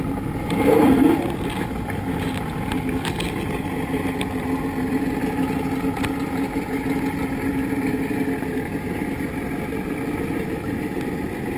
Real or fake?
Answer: real